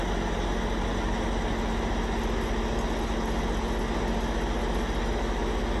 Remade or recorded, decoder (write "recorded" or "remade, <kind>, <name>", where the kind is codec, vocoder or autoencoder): recorded